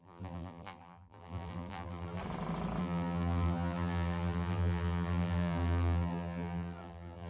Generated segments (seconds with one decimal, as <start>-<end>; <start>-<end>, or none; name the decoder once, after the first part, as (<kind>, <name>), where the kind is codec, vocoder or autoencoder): 0.0-2.2 (vocoder, BigVGAN v2); 2.8-7.3